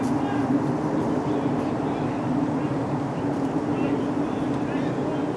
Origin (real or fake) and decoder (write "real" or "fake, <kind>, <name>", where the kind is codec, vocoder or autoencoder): real